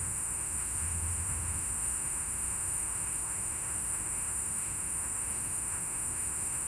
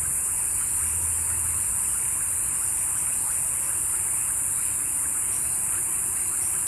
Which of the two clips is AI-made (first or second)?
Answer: first